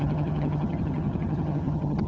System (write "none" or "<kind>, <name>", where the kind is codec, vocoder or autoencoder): vocoder, HiFi-GAN